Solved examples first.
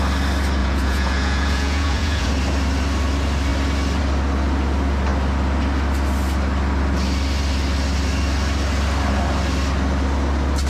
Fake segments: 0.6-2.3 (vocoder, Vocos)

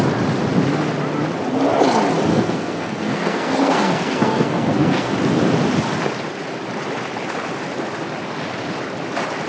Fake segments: 2.3-5.1 (codec, SNAC)

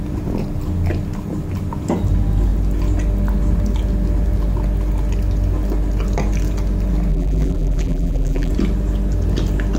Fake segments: 7.1-8.5 (vocoder, BigVGAN v2)

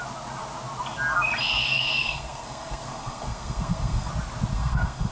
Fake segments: 1.6-4.1 (codec, SNAC); 4.5-5.1

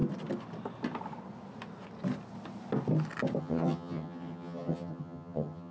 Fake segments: 3.4-5.7 (vocoder, HiFi-GAN)